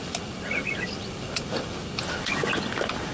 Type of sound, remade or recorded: recorded